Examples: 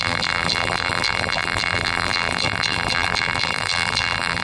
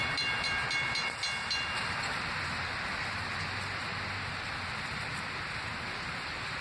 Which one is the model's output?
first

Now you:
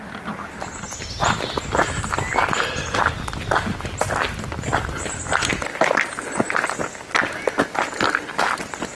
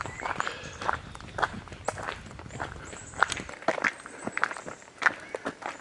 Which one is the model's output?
second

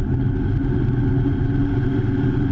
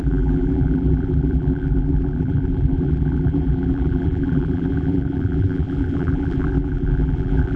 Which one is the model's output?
second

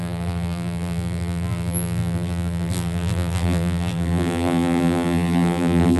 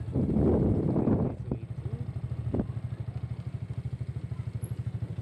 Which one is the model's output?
first